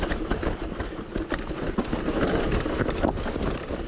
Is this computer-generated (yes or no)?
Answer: no